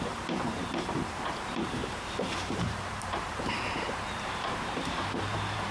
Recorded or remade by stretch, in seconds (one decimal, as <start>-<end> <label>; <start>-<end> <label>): 0.0-5.7 remade